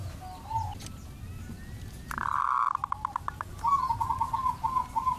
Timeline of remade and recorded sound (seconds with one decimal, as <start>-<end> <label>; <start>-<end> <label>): 0.0-5.2 recorded